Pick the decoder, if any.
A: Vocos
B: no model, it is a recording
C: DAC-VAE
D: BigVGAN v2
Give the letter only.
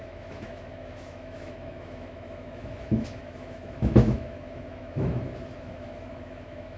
C